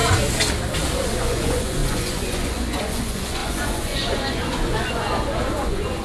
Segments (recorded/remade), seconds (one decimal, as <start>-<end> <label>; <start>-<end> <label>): 0.0-1.2 recorded; 1.2-6.0 remade